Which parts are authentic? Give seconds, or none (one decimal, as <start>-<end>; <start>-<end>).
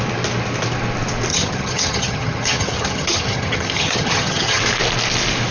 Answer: 0.0-1.3; 4.6-5.5